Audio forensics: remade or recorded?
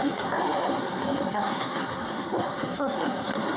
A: remade